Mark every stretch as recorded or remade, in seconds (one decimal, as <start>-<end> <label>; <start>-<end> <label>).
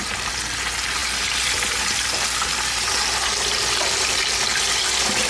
0.0-5.3 recorded